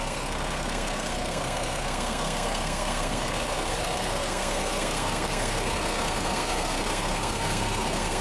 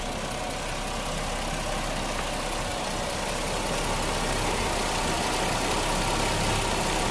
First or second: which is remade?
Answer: first